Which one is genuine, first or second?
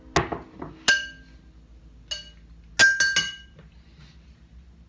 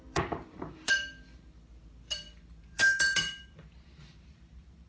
first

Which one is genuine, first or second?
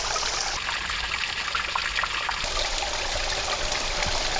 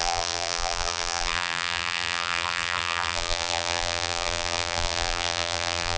first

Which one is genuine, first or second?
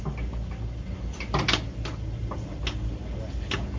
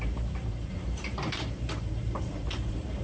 first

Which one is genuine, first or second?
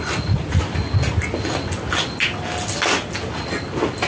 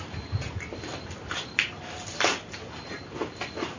first